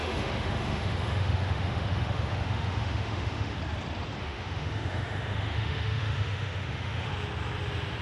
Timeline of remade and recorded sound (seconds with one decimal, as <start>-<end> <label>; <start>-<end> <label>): 0.0-3.6 remade; 3.6-4.2 recorded; 4.2-7.1 remade; 7.1-8.0 recorded